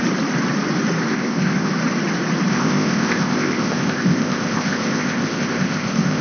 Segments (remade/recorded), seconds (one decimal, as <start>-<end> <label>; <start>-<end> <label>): 0.0-1.1 recorded; 1.1-1.7 remade; 1.7-2.5 recorded; 2.5-6.2 remade